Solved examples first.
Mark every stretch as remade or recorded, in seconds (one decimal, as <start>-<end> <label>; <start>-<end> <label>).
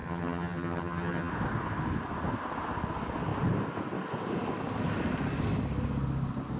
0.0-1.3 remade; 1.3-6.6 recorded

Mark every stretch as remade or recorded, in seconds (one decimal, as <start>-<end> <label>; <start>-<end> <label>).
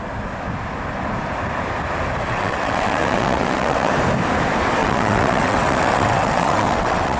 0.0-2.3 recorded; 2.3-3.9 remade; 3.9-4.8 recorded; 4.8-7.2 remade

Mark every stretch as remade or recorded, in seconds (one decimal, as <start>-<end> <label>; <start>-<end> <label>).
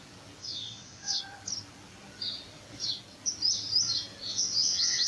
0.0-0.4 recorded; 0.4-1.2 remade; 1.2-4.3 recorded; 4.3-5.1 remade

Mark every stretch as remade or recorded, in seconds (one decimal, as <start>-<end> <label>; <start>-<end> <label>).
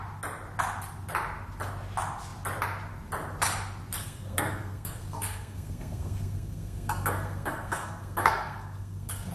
0.0-4.0 recorded; 4.0-9.3 remade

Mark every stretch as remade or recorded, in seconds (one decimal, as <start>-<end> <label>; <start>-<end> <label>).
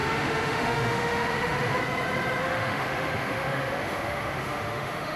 0.0-1.8 remade; 1.8-2.4 recorded; 2.4-5.2 remade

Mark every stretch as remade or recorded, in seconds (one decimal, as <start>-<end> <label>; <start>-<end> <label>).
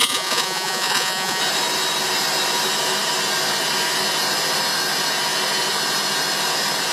0.0-1.4 remade; 1.4-6.9 recorded